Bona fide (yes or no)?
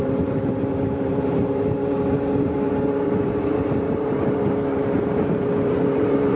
no